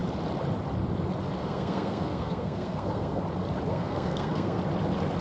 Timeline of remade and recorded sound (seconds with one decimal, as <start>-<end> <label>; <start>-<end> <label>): 0.0-1.4 recorded; 1.4-3.2 remade; 3.2-3.7 recorded; 3.7-4.6 remade; 4.6-5.2 recorded